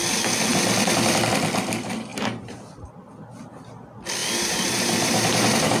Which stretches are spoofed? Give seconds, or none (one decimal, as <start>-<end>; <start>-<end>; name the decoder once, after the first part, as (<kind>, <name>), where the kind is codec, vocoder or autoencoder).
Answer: 2.1-2.8 (vocoder, BigVGAN v2); 4.2-5.8